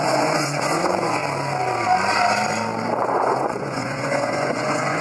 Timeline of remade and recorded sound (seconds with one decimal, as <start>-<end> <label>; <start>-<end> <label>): 0.0-1.2 remade; 1.2-3.0 recorded; 3.0-5.0 remade